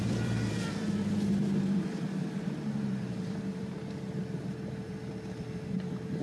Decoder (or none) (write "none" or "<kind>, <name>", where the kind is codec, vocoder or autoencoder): vocoder, BigVGAN v2